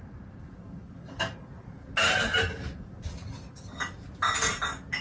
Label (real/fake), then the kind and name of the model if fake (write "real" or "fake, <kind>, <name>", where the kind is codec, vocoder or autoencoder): real